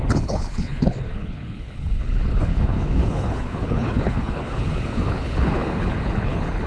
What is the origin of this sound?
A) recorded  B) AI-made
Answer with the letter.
B